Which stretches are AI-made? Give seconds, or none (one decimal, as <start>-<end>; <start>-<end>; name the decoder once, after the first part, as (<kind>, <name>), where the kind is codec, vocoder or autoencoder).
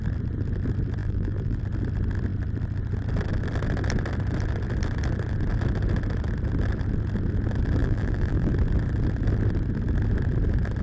1.0-1.6 (vocoder, BigVGAN v2); 7.8-8.5